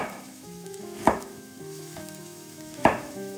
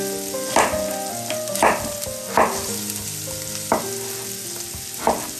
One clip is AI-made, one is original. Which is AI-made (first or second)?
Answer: first